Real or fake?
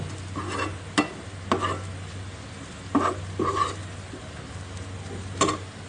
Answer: real